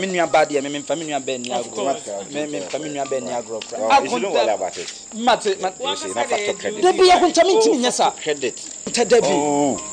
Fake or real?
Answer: real